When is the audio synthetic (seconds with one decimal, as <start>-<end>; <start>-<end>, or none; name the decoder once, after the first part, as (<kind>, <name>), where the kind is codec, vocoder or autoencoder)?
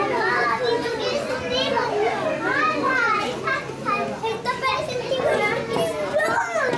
none